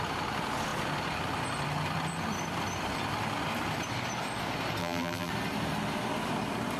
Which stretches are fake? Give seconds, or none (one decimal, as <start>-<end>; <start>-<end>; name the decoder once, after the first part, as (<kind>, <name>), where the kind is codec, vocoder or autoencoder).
4.8-5.3 (vocoder, BigVGAN v2)